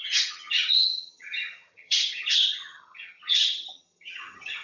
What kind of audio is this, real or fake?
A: fake